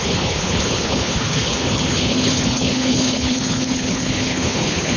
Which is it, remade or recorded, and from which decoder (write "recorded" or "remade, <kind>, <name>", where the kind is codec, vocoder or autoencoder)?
remade, codec, HILCodec